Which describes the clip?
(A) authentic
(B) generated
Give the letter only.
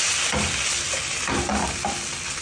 A